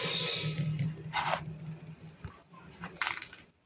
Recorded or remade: recorded